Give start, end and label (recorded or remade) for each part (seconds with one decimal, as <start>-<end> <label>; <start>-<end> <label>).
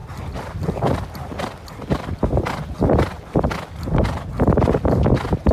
0.0-5.5 recorded